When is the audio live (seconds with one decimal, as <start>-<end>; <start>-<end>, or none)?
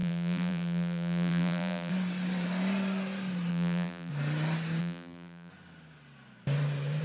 1.9-3.5; 4.1-4.8; 5.5-7.0